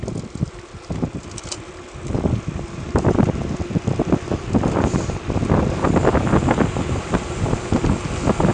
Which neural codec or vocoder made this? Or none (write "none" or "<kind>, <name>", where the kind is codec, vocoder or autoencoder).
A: none